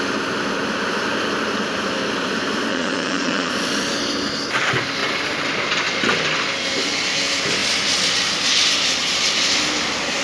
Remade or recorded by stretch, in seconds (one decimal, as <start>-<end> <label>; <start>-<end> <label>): 0.0-2.7 recorded; 2.7-3.5 remade; 3.5-10.2 recorded